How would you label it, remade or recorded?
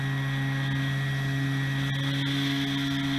recorded